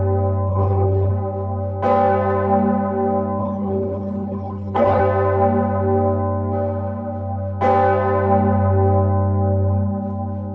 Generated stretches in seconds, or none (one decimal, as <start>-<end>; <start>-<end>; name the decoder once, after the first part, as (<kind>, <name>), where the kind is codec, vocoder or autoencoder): 0.5-1.1 (codec, HILCodec); 3.4-5.0